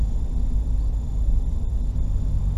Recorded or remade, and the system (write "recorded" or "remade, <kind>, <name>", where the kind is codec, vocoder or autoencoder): recorded